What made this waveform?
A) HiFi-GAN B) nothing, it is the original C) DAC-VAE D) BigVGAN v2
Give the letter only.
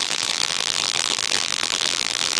D